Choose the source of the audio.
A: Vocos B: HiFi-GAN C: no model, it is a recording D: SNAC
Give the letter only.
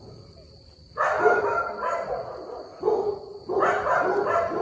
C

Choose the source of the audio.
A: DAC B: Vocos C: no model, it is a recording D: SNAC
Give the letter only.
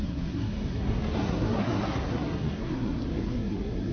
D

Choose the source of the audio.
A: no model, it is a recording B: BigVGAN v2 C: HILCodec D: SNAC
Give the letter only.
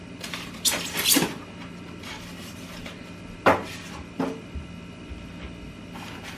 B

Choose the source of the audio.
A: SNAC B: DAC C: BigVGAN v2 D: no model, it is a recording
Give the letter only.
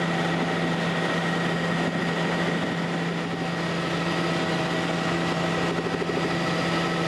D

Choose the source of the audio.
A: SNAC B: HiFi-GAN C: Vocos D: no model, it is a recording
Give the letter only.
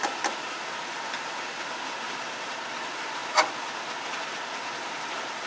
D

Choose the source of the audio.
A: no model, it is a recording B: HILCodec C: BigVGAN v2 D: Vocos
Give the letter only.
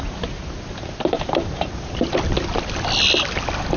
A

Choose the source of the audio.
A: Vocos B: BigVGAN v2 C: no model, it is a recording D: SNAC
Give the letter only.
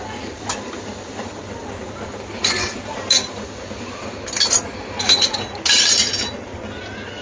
C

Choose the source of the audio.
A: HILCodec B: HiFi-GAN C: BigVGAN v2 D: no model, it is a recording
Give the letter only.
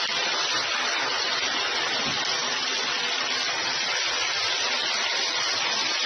C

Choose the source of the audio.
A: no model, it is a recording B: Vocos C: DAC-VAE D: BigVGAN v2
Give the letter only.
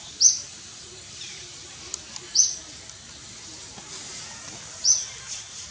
A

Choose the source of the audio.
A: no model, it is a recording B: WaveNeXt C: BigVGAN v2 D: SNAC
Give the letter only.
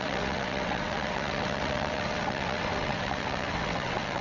B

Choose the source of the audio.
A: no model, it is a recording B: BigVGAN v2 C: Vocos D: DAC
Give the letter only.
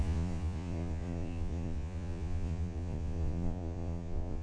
C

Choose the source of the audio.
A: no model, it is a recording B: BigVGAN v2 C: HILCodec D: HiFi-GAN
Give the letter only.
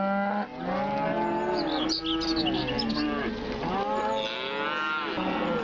A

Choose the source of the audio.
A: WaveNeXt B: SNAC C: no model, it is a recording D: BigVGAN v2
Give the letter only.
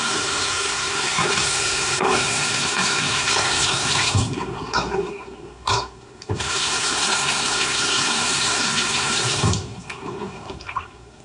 B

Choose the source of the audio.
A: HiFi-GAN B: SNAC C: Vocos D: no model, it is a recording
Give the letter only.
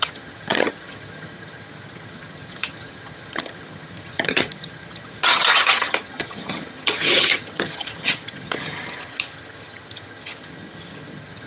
A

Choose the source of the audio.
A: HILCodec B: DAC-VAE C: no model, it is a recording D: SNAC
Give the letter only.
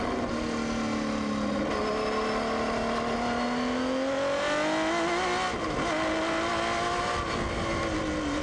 C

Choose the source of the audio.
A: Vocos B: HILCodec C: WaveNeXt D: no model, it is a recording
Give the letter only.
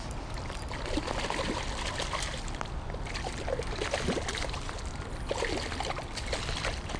D